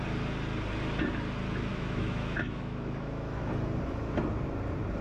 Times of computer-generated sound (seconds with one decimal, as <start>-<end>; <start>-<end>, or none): 1.7-3.5